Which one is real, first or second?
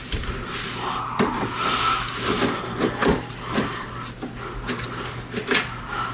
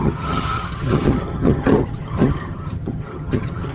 first